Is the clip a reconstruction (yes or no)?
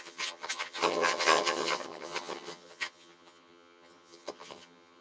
yes